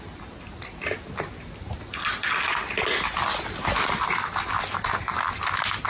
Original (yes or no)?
yes